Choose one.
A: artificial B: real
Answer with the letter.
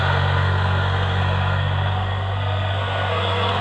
A